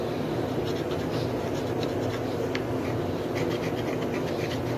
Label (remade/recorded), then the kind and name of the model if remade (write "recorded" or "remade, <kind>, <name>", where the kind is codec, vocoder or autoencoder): recorded